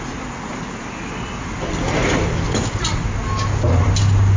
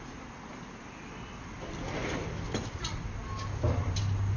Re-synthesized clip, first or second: second